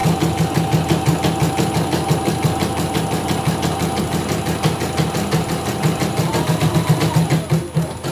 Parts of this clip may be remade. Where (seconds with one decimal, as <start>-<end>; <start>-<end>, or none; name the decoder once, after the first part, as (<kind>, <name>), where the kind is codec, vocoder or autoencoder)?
none